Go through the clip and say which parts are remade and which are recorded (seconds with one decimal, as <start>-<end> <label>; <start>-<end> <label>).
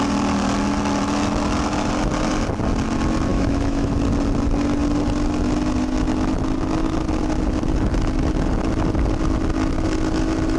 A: 0.0-3.3 recorded; 3.3-3.9 remade; 3.9-10.6 recorded